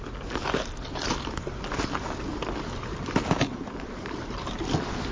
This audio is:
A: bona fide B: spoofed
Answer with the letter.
A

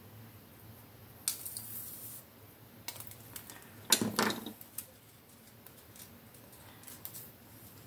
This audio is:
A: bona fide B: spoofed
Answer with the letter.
A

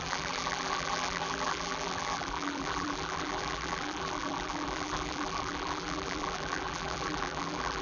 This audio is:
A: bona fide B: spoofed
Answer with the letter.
B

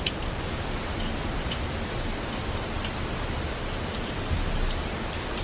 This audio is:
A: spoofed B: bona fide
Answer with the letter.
B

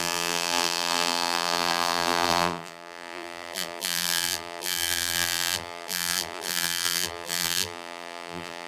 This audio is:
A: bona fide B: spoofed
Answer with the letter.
B